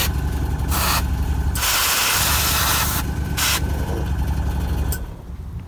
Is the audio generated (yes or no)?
no